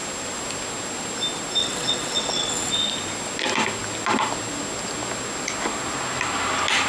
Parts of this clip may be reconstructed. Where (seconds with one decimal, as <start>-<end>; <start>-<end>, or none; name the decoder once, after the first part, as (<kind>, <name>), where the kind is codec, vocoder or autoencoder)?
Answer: 1.6-2.7 (vocoder, WaveNeXt)